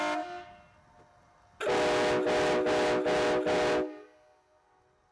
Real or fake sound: real